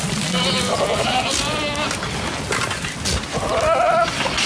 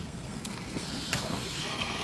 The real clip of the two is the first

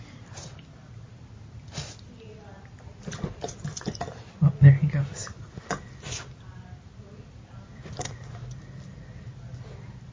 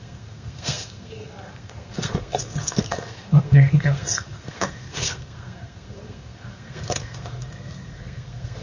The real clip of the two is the first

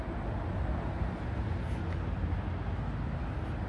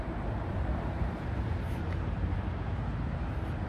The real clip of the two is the first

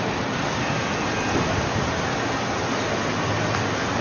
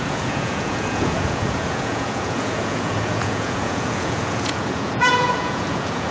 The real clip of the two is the first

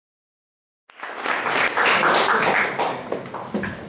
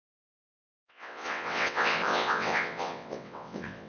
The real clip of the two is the first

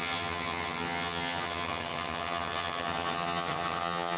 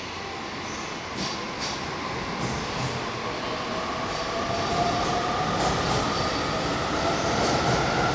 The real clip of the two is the second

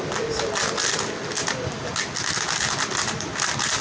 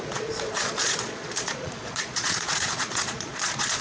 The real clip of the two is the first